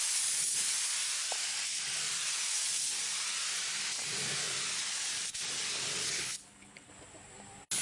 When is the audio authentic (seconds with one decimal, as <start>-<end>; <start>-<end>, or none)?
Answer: 0.0-6.0; 6.9-7.8